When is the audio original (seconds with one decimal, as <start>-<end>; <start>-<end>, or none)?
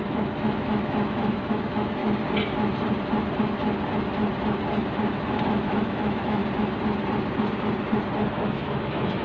2.0-5.4; 6.4-8.4